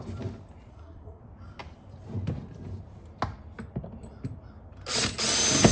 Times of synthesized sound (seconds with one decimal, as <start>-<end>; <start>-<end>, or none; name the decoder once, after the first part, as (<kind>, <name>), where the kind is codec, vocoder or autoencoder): 0.7-1.2 (codec, SNAC)